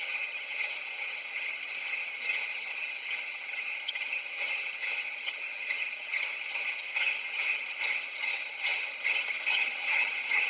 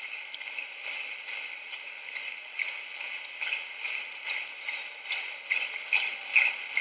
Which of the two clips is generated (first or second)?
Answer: first